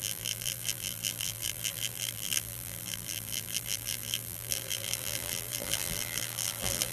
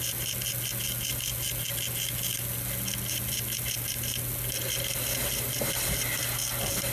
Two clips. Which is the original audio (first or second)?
second